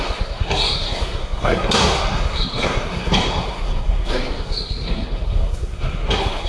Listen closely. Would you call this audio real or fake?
fake